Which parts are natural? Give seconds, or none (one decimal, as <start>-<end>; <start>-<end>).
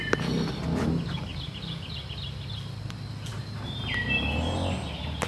0.0-5.3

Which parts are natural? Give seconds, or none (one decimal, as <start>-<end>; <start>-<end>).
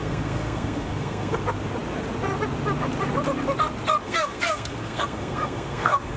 1.4-4.0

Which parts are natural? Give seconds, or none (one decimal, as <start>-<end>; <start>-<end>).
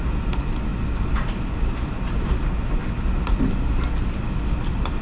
0.0-5.0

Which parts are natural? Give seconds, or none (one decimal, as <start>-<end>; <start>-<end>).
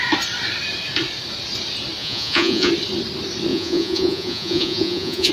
0.0-2.0; 2.7-3.5